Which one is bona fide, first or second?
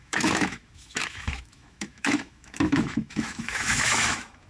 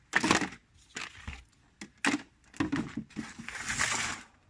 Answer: second